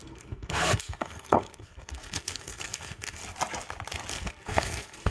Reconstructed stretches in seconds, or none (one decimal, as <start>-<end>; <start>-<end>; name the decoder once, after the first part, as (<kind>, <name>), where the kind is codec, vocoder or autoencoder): 0.0-3.2 (codec, SNAC); 4.1-5.1

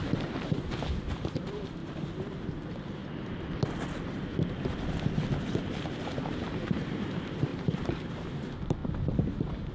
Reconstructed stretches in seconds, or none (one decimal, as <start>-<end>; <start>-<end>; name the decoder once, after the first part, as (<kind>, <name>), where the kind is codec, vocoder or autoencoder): 0.0-1.8 (vocoder, BigVGAN v2); 2.4-3.0; 5.8-8.8

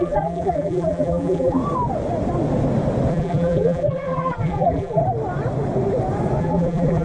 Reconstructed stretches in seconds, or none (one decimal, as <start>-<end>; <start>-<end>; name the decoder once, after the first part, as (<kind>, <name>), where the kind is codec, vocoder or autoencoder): 0.0-1.6 (vocoder, BigVGAN v2); 3.1-5.0; 6.4-7.0

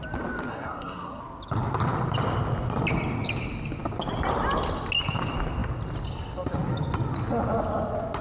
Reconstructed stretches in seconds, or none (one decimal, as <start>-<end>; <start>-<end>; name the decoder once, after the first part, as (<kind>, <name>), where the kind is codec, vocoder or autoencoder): 0.5-1.2 (codec, SNAC)

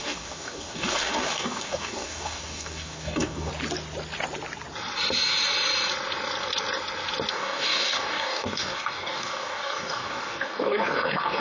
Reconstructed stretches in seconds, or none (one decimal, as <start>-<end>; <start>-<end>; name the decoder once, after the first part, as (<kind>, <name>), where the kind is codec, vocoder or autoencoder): 0.0-3.5 (codec, DAC); 7.3-11.4